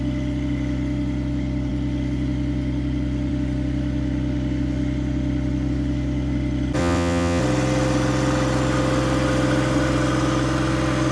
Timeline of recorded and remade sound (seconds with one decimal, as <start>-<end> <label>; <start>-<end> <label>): 0.0-6.8 recorded; 6.8-7.4 remade; 7.4-11.1 recorded